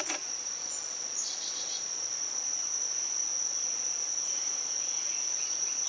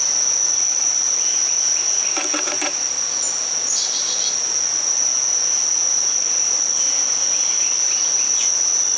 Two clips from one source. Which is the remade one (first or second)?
first